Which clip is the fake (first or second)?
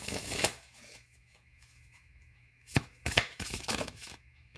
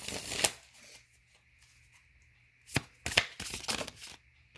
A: first